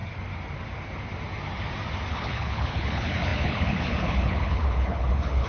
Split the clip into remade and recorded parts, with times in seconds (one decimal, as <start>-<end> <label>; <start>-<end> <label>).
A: 0.0-2.1 recorded; 2.1-5.5 remade